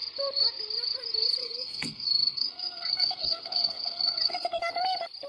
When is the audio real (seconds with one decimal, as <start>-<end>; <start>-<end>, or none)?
0.0-1.4; 4.6-5.3